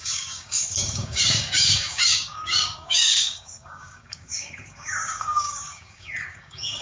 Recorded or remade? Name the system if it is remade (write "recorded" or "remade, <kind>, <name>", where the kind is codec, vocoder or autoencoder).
remade, codec, DAC